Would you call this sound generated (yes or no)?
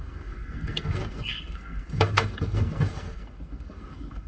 yes